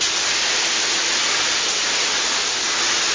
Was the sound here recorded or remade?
recorded